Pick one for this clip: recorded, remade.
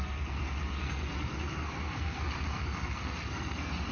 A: remade